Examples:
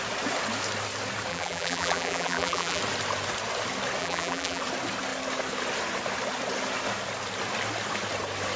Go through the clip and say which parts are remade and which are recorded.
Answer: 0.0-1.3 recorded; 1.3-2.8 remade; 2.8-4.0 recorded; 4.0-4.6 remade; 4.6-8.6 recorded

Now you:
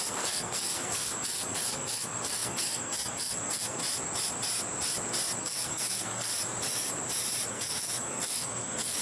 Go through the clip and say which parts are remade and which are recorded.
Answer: 0.0-3.8 remade; 3.8-5.4 recorded; 5.4-6.3 remade; 6.3-7.5 recorded; 7.5-9.0 remade

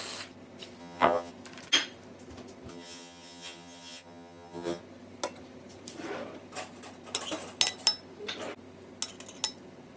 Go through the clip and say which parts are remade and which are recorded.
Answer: 0.0-0.8 recorded; 0.8-1.3 remade; 1.3-2.7 recorded; 2.7-4.8 remade; 4.8-10.0 recorded

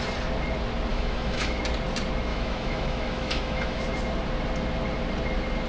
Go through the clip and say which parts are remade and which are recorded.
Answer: 0.0-0.9 recorded; 0.9-1.6 remade; 1.6-2.3 recorded; 2.3-3.8 remade; 3.8-5.7 recorded

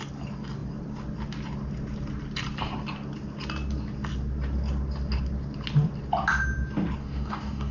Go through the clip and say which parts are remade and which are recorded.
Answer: 0.0-7.0 recorded; 7.0-7.7 remade

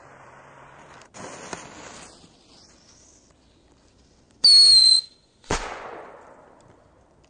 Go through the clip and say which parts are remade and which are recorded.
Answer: 0.0-4.8 recorded; 4.8-6.1 remade; 6.1-7.3 recorded

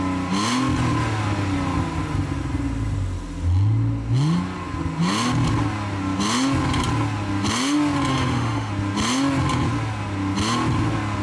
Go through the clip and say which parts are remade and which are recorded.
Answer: 0.0-8.1 recorded; 8.1-8.7 remade; 8.7-11.2 recorded